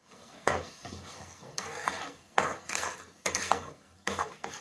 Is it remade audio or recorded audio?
remade